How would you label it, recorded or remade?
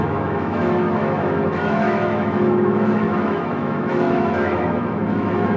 remade